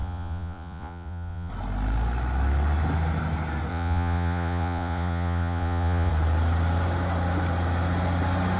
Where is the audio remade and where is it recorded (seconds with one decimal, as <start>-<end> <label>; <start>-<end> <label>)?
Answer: 0.0-1.5 remade; 1.5-3.7 recorded; 3.7-6.1 remade; 6.1-8.6 recorded